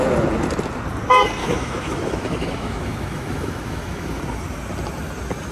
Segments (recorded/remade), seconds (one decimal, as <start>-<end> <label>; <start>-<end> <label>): 0.0-1.4 recorded; 1.4-4.2 remade; 4.2-5.5 recorded